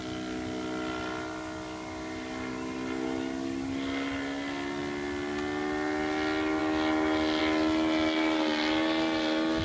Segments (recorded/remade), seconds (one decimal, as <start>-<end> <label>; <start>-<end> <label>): 0.0-9.6 recorded